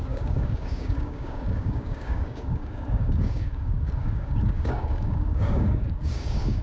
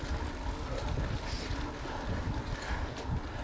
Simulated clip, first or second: first